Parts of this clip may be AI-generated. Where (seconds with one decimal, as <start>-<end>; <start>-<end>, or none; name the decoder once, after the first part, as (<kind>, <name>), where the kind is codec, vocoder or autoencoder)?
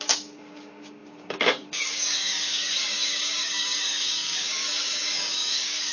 0.0-5.9 (codec, DAC)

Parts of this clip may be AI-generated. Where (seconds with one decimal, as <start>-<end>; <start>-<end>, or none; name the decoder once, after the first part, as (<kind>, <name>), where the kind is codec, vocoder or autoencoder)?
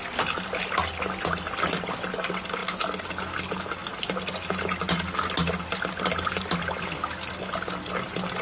none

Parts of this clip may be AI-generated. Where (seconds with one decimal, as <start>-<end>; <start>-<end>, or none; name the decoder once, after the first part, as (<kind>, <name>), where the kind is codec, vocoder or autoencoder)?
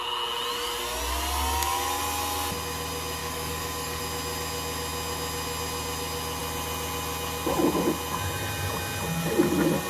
3.2-4.0 (codec, DAC)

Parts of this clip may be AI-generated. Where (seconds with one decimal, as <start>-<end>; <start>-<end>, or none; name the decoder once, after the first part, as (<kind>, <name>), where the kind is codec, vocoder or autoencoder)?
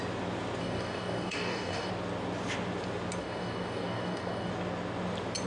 0.6-1.9 (codec, DAC); 3.2-4.5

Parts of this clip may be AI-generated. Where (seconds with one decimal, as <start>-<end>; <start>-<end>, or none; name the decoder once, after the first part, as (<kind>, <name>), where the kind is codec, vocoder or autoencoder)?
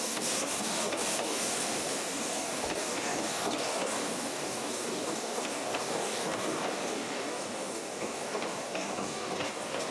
0.0-9.9 (codec, DAC)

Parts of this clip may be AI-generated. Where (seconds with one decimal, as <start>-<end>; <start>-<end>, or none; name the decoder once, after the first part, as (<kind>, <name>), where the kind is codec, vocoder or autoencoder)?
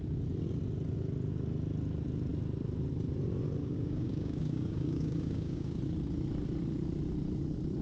3.6-5.8 (codec, DAC)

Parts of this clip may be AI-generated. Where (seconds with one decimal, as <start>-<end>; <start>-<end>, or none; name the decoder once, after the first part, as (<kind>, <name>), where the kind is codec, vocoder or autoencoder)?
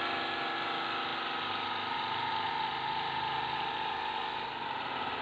none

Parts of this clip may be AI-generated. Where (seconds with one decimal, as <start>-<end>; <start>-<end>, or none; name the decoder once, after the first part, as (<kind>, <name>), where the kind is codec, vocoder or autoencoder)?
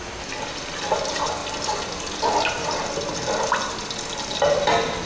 none